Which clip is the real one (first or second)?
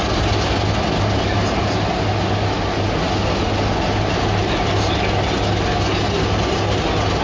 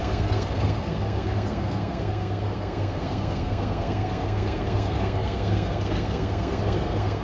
first